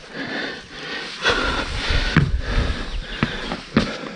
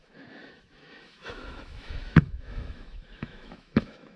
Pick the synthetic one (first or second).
second